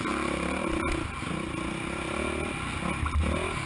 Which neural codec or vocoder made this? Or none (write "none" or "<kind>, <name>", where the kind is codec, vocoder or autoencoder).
none